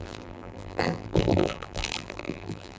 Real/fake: fake